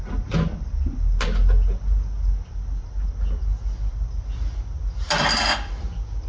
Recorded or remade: recorded